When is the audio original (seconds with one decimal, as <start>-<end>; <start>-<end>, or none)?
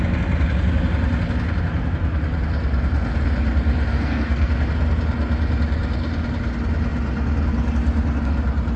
0.0-3.9; 4.5-8.8